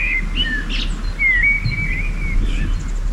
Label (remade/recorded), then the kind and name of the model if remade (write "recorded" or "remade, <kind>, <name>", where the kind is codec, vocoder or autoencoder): recorded